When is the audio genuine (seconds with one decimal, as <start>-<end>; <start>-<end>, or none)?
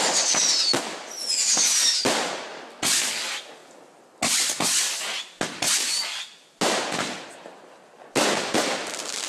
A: 0.0-9.3